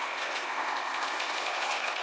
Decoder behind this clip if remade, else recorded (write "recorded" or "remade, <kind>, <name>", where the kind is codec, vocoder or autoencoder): remade, codec, ZipCodec